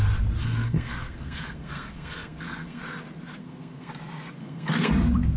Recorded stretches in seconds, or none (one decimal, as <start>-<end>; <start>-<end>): 0.0-0.4; 2.8-3.4; 3.9-4.4; 4.9-5.4